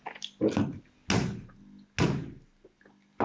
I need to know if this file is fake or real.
real